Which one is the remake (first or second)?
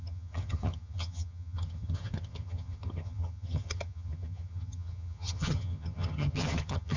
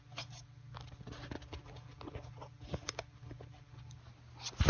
first